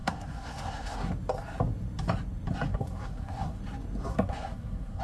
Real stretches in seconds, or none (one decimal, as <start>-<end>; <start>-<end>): 1.1-2.7; 3.6-4.1